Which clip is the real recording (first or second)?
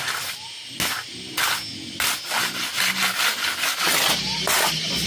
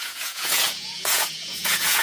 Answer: first